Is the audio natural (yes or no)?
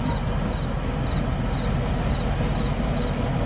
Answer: yes